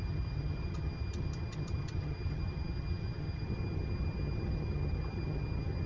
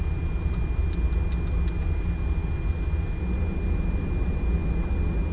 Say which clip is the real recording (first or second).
second